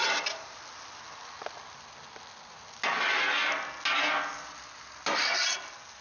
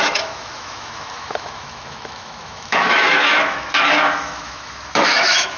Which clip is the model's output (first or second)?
second